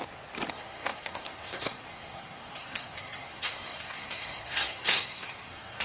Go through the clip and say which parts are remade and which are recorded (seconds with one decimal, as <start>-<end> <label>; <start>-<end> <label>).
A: 0.0-0.5 recorded; 0.5-5.8 remade